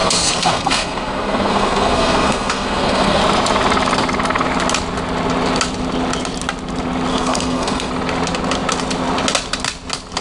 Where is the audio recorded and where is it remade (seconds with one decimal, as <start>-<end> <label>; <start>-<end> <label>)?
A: 0.0-3.2 remade; 3.2-7.1 recorded; 7.1-7.9 remade; 7.9-10.2 recorded